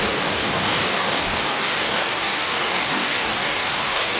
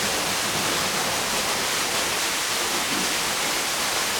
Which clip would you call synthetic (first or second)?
first